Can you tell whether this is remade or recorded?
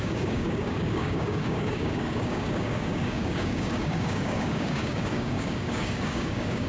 remade